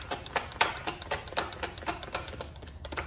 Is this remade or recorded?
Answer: recorded